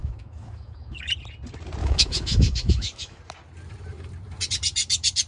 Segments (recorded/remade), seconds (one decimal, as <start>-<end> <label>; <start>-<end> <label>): 0.0-1.1 remade; 1.1-1.8 recorded; 1.8-3.2 remade; 3.2-5.3 recorded